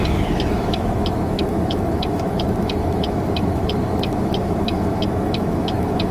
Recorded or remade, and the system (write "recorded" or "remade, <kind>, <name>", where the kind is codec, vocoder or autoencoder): remade, autoencoder, DAC-VAE